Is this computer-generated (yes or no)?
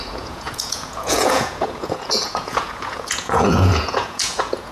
yes